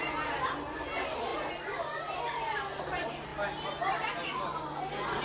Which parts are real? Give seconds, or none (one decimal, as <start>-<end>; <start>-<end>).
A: 0.0-5.2